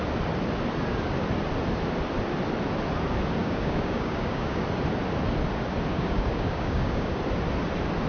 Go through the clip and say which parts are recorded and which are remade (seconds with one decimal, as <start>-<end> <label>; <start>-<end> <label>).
0.0-3.4 recorded; 3.4-4.6 remade; 4.6-5.9 recorded; 5.9-7.1 remade; 7.1-8.1 recorded